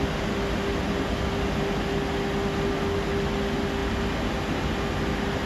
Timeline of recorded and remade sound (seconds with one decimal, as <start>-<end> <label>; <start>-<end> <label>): 0.0-5.5 recorded